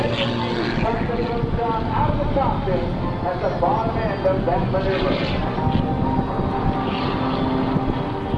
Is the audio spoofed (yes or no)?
no